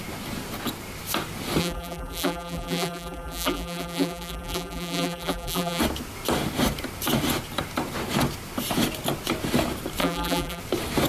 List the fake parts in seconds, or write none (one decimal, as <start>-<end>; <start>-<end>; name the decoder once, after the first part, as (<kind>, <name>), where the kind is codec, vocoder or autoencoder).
1.6-5.8 (vocoder, BigVGAN v2); 10.0-10.6